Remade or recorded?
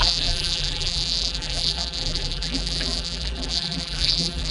remade